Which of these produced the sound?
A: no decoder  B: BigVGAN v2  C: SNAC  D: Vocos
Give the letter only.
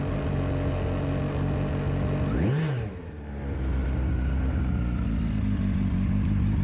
A